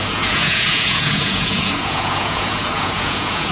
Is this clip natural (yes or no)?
no